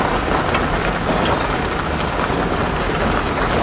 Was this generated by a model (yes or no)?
no